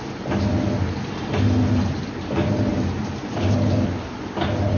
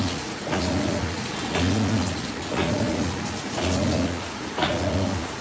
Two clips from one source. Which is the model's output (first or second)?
second